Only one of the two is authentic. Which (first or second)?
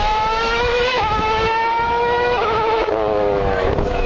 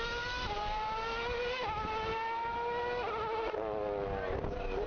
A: second